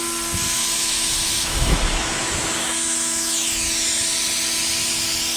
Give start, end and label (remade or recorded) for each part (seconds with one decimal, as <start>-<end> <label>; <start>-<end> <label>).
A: 0.0-0.6 recorded; 0.6-3.8 remade; 3.8-5.4 recorded